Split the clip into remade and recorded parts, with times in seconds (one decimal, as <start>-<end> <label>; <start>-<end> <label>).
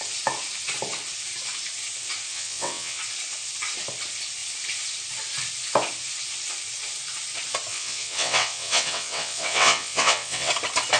0.0-2.3 recorded; 2.3-3.0 remade; 3.0-7.7 recorded; 7.7-10.5 remade; 10.5-11.0 recorded